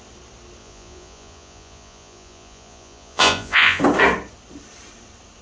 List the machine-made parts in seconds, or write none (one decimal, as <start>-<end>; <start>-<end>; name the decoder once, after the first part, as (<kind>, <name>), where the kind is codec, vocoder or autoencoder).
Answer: 0.6-3.8 (vocoder, Vocos)